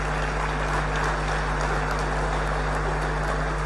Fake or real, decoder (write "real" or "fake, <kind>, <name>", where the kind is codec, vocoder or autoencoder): real